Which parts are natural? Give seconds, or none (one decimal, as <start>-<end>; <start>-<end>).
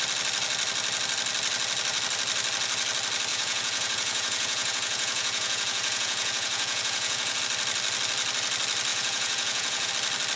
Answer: 0.0-3.3; 7.4-8.9; 9.9-10.4